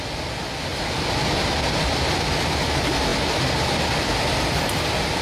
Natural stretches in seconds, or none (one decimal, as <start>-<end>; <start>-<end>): 0.0-5.2